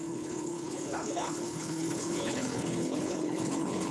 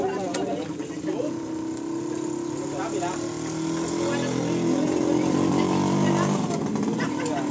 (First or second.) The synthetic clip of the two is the first